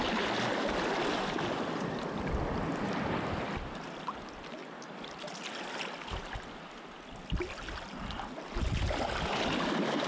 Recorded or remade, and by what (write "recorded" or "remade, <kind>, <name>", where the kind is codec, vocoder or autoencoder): recorded